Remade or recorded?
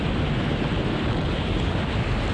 recorded